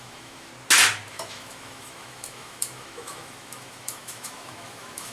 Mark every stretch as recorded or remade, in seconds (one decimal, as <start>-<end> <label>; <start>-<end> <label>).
0.0-0.5 remade; 0.5-1.1 recorded; 1.1-5.1 remade